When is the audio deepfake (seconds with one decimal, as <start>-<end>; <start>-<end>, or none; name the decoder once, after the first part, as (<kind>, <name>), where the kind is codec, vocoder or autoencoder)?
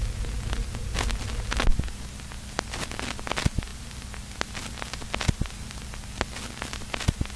none